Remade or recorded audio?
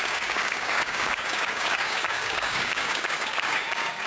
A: remade